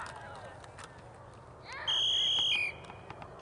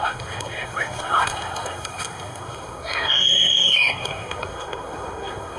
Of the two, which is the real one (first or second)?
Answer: first